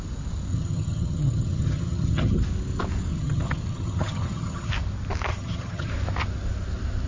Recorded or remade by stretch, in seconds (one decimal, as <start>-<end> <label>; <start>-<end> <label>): 0.0-0.5 recorded; 0.5-2.4 remade; 2.4-3.1 recorded; 3.1-4.7 remade; 4.7-5.3 recorded; 5.3-5.9 remade; 5.9-7.1 recorded